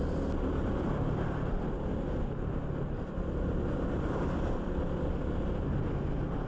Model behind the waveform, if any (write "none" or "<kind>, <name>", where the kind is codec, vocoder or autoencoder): none